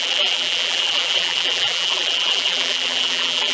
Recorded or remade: remade